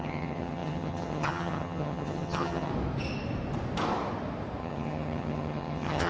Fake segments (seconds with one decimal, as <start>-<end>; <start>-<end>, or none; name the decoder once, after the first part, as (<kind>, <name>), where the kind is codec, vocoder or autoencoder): 0.0-2.7 (vocoder, HiFi-GAN); 4.6-6.1